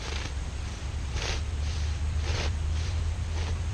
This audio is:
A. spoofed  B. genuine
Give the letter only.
A